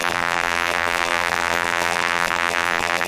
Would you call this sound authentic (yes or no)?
no